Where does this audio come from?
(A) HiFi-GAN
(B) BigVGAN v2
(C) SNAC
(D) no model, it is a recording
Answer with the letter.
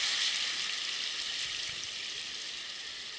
D